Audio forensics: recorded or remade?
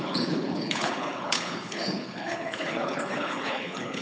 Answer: remade